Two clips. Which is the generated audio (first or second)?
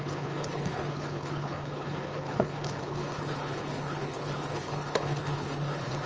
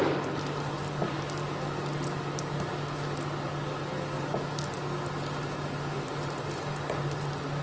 first